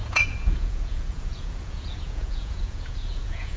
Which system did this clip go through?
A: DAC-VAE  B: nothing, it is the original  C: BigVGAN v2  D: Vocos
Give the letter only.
D